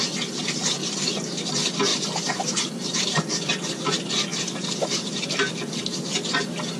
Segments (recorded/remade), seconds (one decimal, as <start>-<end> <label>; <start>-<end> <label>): 0.0-1.9 recorded; 1.9-3.5 remade; 3.5-4.3 recorded; 4.3-6.0 remade; 6.0-6.8 recorded